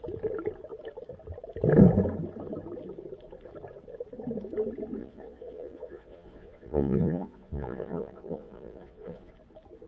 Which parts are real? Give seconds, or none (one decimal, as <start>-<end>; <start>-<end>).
0.0-5.0; 9.3-9.9